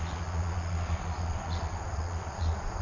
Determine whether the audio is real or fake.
fake